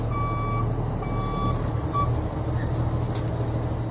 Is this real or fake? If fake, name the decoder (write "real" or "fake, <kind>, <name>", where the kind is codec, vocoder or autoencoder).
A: real